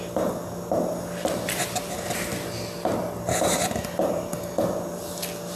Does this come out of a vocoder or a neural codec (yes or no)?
no